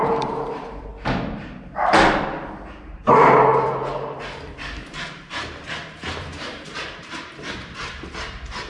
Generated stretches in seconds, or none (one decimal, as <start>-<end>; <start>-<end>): 0.0-0.9; 2.8-8.7